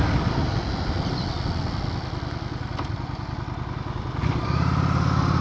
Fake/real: real